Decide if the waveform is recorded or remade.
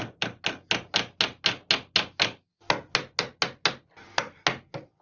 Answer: recorded